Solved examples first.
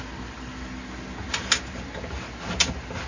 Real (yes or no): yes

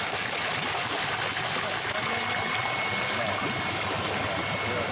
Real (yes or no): yes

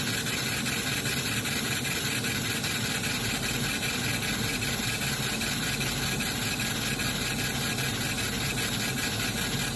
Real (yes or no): yes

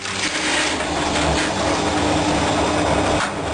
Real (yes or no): yes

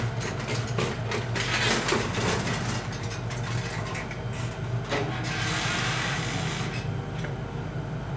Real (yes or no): yes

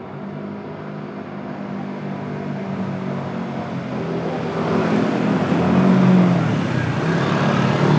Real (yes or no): yes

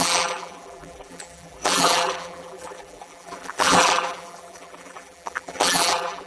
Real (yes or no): no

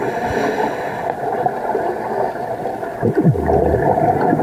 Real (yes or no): yes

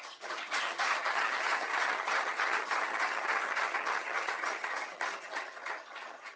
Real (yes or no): no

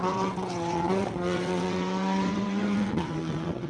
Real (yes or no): no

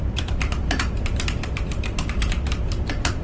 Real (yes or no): no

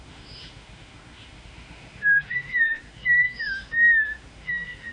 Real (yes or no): no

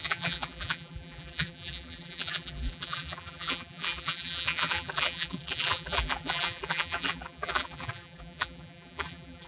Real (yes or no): no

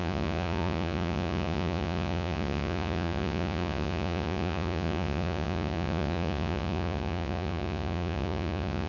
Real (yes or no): no